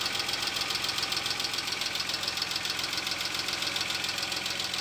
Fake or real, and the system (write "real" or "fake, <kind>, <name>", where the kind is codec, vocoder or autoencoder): fake, vocoder, BigVGAN v2